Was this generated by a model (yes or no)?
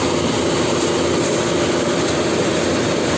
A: no